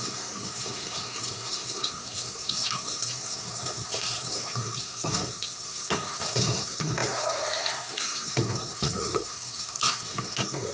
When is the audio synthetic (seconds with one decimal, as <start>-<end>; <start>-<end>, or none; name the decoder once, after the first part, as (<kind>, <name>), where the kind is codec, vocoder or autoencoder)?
0.0-10.7 (codec, SNAC)